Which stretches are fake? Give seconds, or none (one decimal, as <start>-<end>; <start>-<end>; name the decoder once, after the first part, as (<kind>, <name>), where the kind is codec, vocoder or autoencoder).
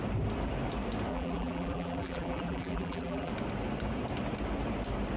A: 1.1-3.3 (vocoder, BigVGAN v2)